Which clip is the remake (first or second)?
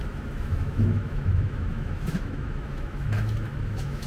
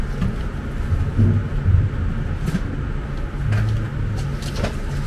first